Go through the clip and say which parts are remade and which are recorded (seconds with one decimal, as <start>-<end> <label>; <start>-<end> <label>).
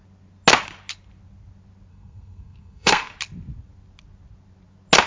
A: 0.0-1.9 recorded; 1.9-3.1 remade; 3.1-5.1 recorded